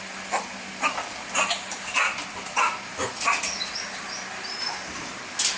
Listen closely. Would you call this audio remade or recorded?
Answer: recorded